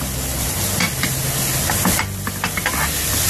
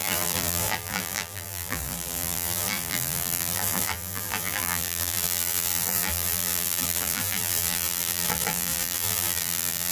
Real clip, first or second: first